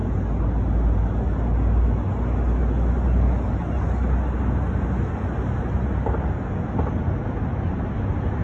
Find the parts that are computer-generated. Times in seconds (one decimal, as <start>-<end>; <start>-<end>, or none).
none